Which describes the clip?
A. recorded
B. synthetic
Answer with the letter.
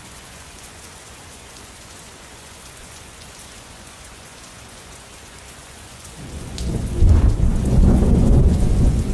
B